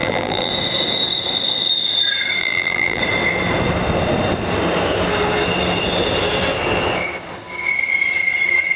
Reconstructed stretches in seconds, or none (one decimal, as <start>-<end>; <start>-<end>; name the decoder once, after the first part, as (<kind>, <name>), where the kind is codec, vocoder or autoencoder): 0.0-0.5 (vocoder, BigVGAN v2); 2.4-3.0